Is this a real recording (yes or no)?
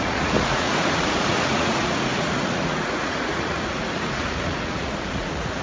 no